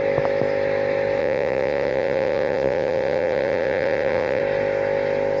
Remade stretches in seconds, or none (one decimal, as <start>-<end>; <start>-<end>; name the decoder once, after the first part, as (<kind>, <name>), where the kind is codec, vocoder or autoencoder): 1.2-4.4 (vocoder, Vocos)